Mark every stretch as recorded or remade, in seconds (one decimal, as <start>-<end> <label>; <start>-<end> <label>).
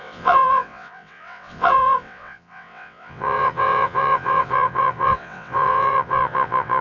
0.0-6.8 remade